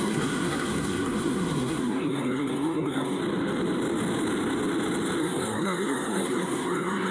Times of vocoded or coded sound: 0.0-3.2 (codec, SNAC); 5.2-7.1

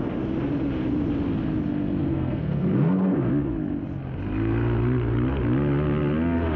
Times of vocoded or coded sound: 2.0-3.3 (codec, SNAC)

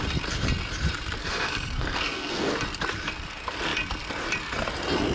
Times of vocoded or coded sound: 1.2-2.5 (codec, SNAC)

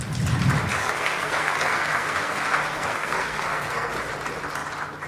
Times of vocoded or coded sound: 0.8-3.9 (codec, SNAC)